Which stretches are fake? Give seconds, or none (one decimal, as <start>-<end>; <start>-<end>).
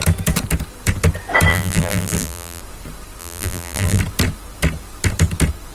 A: 1.5-2.6; 3.2-4.0